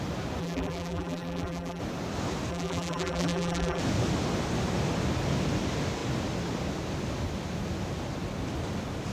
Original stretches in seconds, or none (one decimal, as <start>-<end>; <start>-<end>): 0.0-0.4; 1.8-2.5; 3.8-9.1